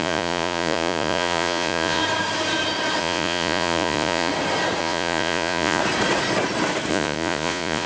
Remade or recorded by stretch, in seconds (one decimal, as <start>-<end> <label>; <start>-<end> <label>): 0.0-2.0 remade; 2.0-3.0 recorded; 3.0-4.3 remade; 4.3-4.8 recorded; 4.8-5.8 remade; 5.8-6.9 recorded; 6.9-7.9 remade